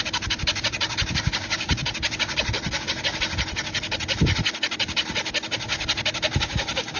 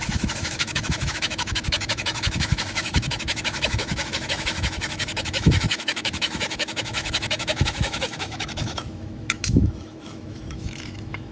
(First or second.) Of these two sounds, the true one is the first